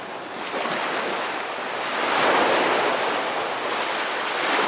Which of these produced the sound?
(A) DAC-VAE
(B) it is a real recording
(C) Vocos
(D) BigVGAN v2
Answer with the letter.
B